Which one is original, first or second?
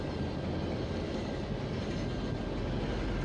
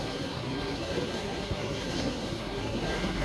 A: first